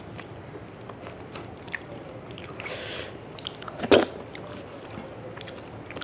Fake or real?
real